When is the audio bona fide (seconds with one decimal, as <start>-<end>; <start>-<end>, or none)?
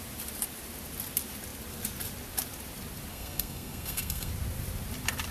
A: 0.0-3.1; 4.3-5.3